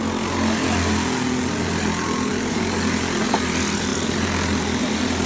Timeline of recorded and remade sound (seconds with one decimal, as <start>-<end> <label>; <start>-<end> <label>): 0.0-5.3 recorded